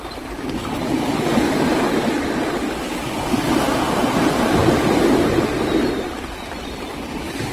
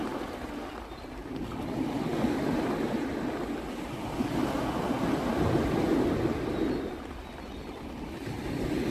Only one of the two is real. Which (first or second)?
second